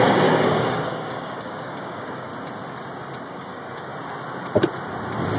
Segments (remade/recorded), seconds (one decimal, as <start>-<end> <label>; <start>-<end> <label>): 0.0-2.3 remade; 2.3-3.2 recorded; 3.2-3.9 remade; 3.9-5.4 recorded

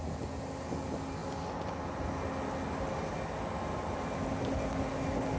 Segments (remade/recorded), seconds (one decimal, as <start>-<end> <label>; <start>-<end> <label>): 0.0-5.4 recorded

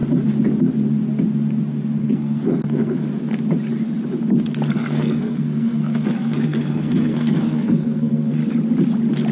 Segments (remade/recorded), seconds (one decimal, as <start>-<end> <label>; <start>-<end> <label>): 0.0-2.0 recorded; 2.0-3.0 remade; 3.0-4.7 recorded; 4.7-8.4 remade; 8.4-9.3 recorded